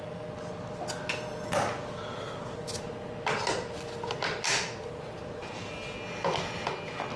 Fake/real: real